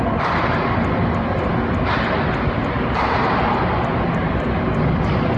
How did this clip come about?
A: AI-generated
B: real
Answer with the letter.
B